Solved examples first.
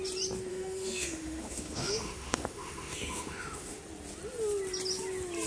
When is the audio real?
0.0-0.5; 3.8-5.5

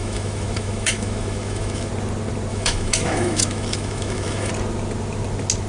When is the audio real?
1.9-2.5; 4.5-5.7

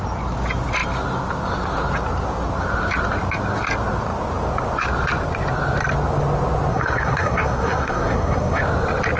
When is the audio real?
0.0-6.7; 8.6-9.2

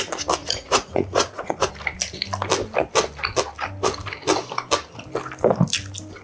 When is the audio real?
0.0-0.4; 1.7-6.2

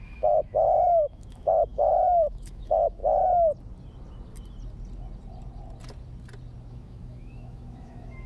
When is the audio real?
3.0-6.7

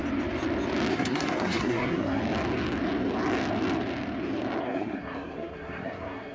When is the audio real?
0.0-0.9; 2.2-4.6